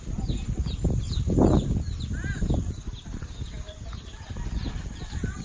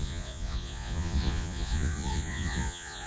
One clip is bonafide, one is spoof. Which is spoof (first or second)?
second